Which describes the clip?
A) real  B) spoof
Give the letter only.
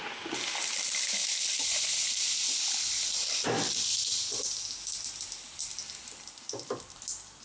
A